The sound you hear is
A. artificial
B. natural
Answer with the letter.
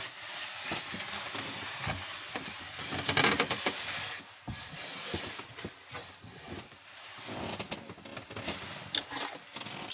B